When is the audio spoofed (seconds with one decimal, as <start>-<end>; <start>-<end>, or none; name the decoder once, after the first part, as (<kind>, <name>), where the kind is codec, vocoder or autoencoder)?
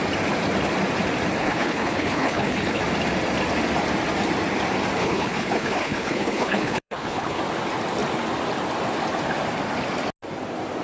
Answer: 1.4-2.8 (codec, HILCodec); 5.0-7.4